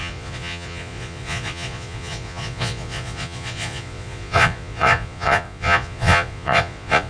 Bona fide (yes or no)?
no